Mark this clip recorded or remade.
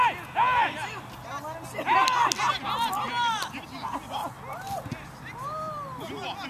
recorded